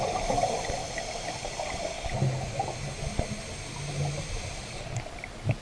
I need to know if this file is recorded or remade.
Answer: recorded